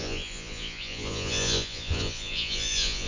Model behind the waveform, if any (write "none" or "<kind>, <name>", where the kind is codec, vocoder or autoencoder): vocoder, Vocos